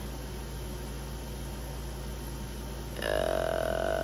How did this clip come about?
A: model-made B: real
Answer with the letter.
B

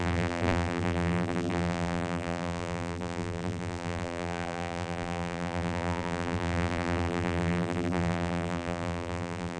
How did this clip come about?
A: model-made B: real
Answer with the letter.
A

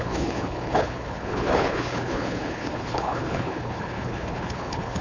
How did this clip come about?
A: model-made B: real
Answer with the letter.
A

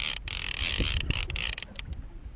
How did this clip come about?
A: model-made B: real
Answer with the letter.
B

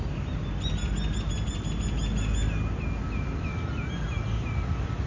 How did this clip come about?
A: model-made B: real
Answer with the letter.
B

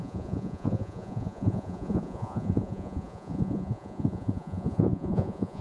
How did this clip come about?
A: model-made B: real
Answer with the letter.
A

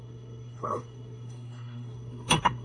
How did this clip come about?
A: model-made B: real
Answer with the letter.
A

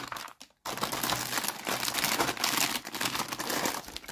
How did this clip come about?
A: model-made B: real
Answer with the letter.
B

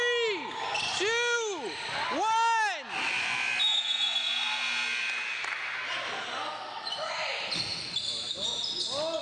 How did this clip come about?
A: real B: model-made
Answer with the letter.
A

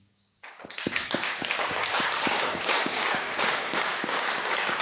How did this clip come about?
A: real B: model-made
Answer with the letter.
B